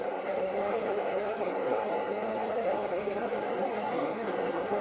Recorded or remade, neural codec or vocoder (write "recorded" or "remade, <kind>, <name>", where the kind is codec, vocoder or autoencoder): remade, codec, SNAC